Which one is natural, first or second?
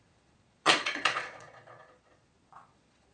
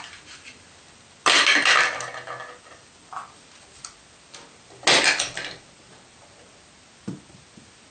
second